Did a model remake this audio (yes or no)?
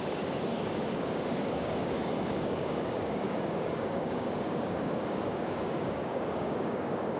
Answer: yes